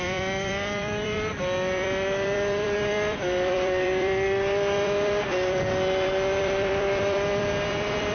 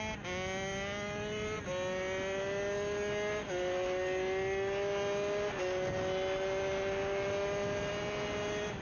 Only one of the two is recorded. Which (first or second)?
second